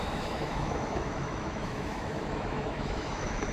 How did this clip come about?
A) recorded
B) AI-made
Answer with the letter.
B